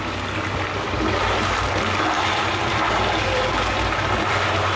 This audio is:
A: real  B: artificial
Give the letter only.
A